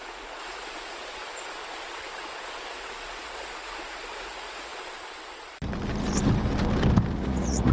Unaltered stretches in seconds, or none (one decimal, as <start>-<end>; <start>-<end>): 1.2-2.7; 4.7-7.1